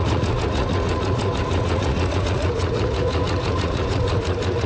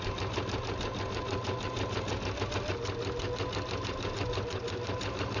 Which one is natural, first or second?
second